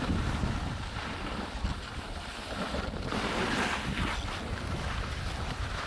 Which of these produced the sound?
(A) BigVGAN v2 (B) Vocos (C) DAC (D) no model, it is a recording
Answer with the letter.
A